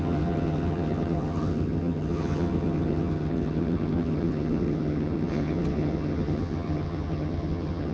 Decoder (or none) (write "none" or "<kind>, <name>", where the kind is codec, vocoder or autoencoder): vocoder, HiFi-GAN